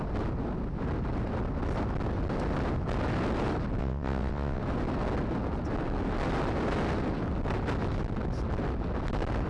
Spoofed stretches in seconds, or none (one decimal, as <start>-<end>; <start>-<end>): 3.8-4.6